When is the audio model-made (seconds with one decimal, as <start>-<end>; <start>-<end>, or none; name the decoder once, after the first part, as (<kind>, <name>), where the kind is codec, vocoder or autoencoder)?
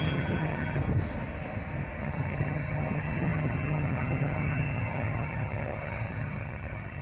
0.0-0.8 (vocoder, HiFi-GAN); 2.0-7.0